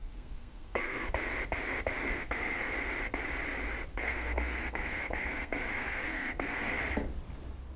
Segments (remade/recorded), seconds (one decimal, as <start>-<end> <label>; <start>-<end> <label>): 0.0-1.1 remade; 1.1-2.0 recorded; 2.0-2.7 remade; 2.7-3.9 recorded; 3.9-6.8 remade; 6.8-7.8 recorded